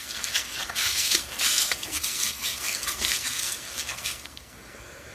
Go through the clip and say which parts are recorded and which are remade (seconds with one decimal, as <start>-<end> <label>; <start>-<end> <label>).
0.0-5.1 remade